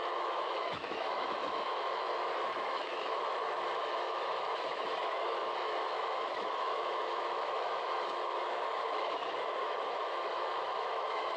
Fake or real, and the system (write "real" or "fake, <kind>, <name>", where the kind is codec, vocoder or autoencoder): fake, autoencoder, DAC-VAE